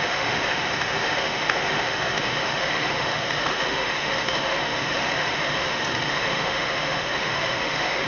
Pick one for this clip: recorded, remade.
remade